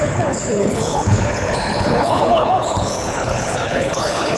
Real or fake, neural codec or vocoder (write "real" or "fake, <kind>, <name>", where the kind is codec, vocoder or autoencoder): fake, codec, HILCodec